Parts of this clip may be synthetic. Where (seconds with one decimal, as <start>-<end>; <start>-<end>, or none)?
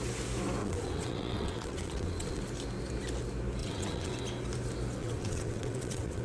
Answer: 0.6-2.4; 3.6-4.2; 5.0-6.2